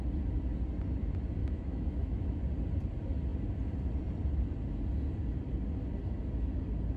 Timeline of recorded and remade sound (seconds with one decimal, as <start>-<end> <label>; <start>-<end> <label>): 0.0-1.4 recorded; 1.4-2.4 remade; 2.4-7.0 recorded